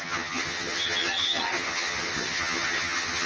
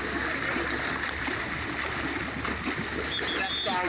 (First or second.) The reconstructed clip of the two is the first